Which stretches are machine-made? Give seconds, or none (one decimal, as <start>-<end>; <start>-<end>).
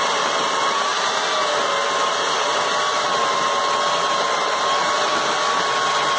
none